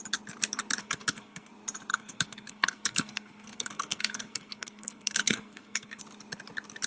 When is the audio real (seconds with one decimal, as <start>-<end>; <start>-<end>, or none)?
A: 0.0-0.8; 1.5-1.9; 6.0-6.9